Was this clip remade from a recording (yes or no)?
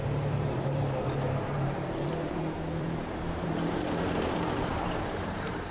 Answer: yes